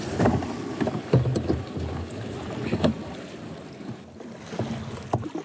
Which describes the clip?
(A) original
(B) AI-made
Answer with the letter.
A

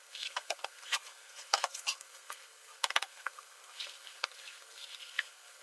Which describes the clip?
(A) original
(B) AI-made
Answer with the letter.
B